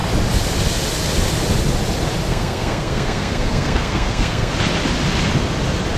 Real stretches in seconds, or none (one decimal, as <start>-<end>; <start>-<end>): 0.0-2.3; 4.5-6.0